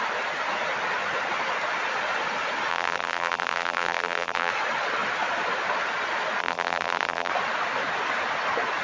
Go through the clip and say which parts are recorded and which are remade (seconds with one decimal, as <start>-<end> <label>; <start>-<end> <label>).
0.0-2.7 recorded; 2.7-4.5 remade; 4.5-6.4 recorded; 6.4-7.3 remade; 7.3-8.8 recorded